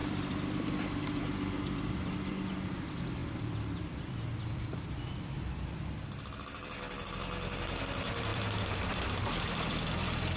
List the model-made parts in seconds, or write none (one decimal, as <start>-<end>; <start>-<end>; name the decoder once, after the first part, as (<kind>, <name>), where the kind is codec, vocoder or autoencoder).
0.0-1.9 (vocoder, BigVGAN v2); 3.2-5.8; 8.3-9.9